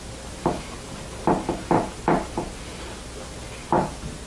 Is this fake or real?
real